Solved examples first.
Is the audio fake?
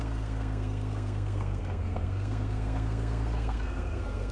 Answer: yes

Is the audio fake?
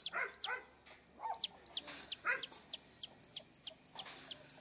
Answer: no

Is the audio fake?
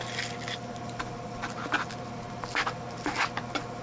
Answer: no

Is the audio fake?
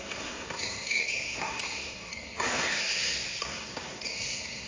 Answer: yes